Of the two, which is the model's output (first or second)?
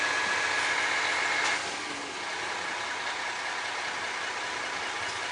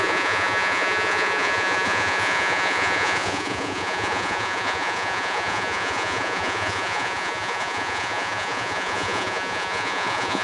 second